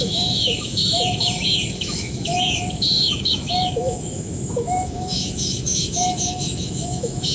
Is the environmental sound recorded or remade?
remade